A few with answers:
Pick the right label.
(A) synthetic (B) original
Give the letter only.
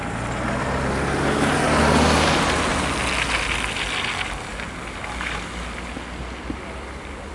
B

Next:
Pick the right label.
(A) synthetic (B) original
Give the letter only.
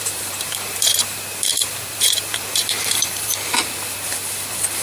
A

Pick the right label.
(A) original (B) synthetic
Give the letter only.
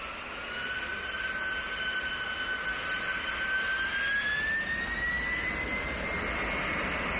A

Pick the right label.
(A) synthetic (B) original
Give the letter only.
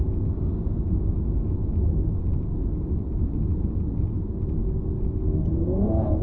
B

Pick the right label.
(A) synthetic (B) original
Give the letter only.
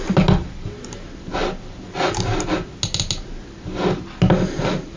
B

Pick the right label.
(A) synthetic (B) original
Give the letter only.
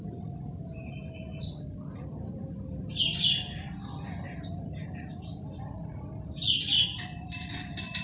B